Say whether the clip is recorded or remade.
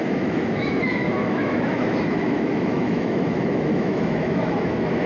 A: remade